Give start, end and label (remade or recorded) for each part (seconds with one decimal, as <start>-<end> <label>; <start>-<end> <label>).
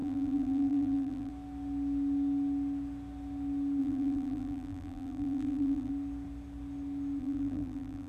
0.0-1.3 remade; 1.3-3.8 recorded; 3.8-5.9 remade; 5.9-7.2 recorded; 7.2-8.1 remade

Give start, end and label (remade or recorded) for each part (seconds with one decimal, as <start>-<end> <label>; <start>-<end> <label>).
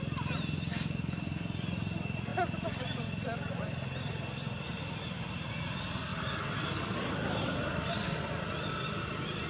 0.0-6.1 recorded; 6.1-7.1 remade; 7.1-9.5 recorded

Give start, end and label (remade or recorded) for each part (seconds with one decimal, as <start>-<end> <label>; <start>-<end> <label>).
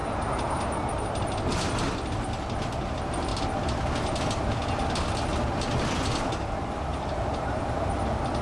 0.0-1.7 remade; 1.7-3.3 recorded; 3.3-4.2 remade; 4.2-6.9 recorded; 6.9-7.6 remade; 7.6-8.4 recorded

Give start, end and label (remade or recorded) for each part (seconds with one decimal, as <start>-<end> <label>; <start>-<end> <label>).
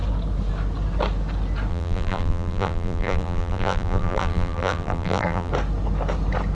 0.0-1.7 recorded; 1.7-5.5 remade; 5.5-6.5 recorded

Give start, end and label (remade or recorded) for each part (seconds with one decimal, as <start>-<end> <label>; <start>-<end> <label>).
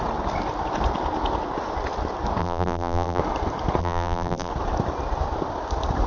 0.0-2.4 recorded; 2.4-3.2 remade; 3.2-3.8 recorded; 3.8-4.5 remade; 4.5-6.1 recorded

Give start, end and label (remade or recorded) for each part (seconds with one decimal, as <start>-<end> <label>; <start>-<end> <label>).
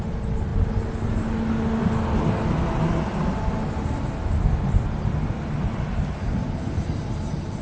0.0-7.6 recorded